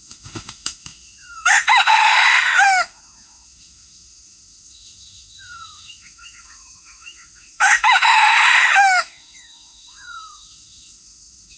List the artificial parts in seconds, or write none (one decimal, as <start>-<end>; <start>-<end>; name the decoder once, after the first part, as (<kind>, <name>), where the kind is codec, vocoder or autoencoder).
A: 0.0-11.6 (autoencoder, DAC-VAE)